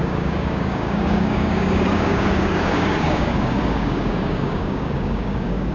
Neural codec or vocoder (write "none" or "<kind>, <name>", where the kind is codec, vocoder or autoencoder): codec, DAC